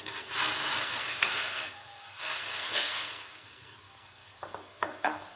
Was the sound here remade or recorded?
remade